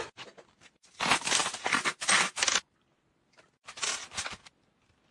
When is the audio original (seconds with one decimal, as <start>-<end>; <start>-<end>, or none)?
0.0-5.1